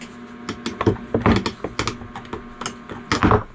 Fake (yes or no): no